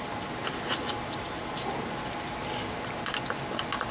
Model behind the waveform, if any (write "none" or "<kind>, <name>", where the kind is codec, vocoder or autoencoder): none